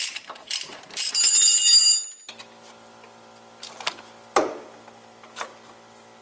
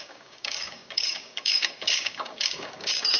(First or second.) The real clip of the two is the first